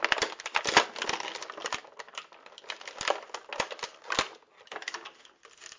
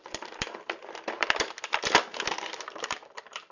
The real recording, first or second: first